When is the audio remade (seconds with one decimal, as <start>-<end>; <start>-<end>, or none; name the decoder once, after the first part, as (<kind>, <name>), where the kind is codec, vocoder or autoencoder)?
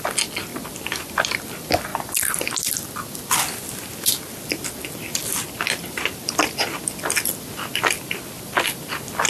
0.5-1.4 (vocoder, BigVGAN v2); 1.9-2.5